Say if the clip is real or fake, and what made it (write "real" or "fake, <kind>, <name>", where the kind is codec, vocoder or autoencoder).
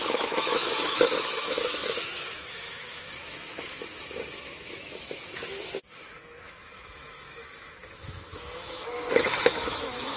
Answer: fake, autoencoder, DAC-VAE